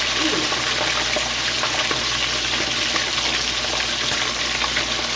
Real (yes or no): yes